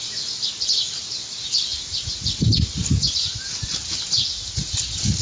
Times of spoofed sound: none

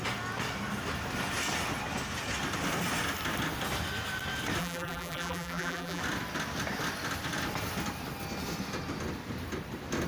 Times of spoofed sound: 4.6-6.0